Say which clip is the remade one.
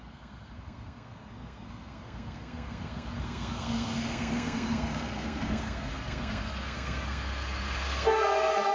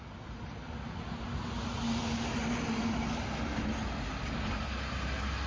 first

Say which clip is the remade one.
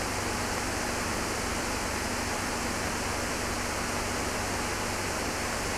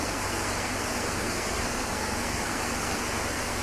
second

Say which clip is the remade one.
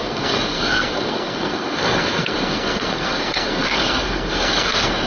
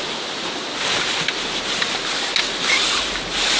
first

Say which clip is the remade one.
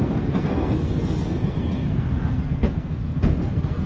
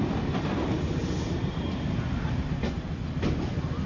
first